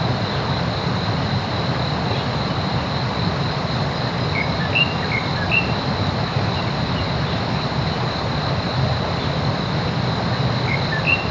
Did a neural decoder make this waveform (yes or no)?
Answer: no